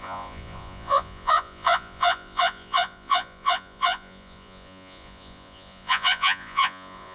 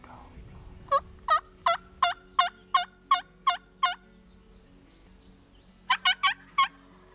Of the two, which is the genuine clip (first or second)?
second